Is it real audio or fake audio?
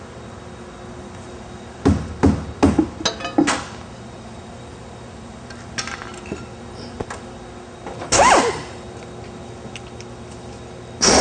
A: real